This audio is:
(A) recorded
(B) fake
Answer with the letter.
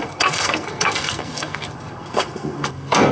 B